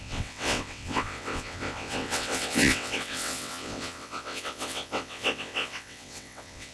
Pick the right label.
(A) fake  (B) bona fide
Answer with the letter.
A